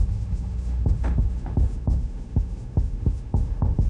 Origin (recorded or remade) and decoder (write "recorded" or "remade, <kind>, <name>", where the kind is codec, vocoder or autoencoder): remade, autoencoder, DAC-VAE